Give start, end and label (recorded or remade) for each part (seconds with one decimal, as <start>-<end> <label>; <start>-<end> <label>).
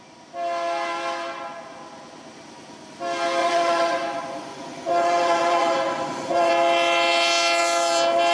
0.0-3.4 recorded; 3.4-6.5 remade; 6.5-8.3 recorded